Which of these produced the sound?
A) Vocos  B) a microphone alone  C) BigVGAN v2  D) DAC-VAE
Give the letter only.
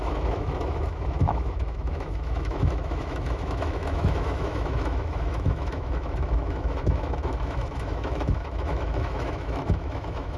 D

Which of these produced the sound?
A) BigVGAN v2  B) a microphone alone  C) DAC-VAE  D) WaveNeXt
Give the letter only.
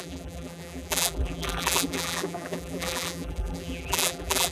A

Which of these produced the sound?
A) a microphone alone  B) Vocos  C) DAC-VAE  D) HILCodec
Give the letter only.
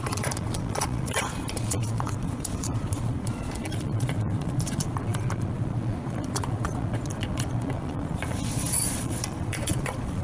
B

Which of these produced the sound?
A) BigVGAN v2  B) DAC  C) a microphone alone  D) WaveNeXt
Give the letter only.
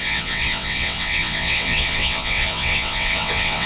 D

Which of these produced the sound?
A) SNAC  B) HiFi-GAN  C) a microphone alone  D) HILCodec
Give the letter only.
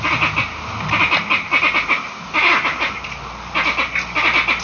C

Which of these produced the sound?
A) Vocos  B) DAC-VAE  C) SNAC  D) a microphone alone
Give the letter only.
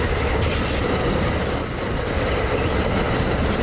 D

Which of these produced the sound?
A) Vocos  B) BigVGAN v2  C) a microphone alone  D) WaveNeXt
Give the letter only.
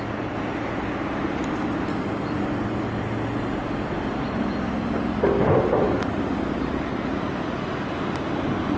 C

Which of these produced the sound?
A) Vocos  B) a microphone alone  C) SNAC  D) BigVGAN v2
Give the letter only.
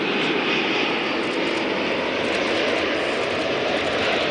B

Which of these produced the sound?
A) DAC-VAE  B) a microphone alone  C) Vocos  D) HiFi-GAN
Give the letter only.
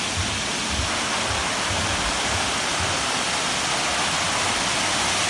B